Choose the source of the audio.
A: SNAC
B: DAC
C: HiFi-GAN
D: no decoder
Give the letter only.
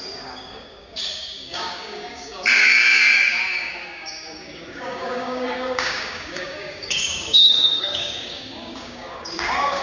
B